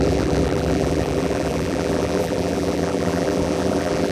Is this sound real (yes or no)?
no